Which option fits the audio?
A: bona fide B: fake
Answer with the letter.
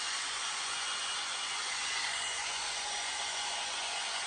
B